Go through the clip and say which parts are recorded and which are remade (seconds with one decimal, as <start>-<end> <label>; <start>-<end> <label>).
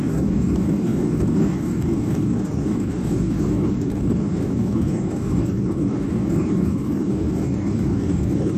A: 0.0-8.6 remade